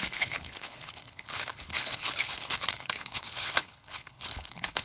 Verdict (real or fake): fake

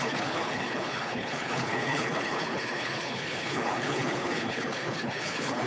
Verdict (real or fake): fake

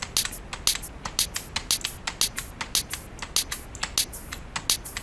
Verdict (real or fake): real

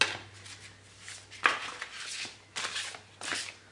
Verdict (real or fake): real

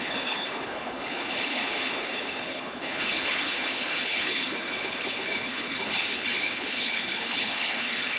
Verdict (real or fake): fake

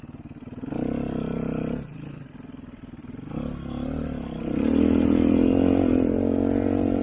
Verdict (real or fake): real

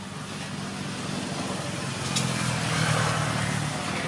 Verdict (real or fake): real